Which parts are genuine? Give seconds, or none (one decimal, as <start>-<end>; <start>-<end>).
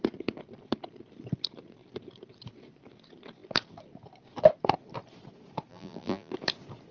0.0-5.7; 6.3-6.9